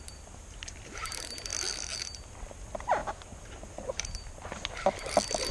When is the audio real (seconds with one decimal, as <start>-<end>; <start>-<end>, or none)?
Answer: 0.0-3.0; 4.7-5.5